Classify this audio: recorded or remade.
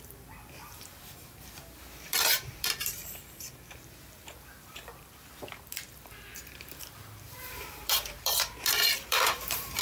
remade